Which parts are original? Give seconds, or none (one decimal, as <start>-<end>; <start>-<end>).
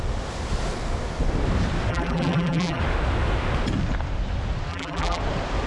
0.0-1.9; 2.8-4.7; 5.2-5.7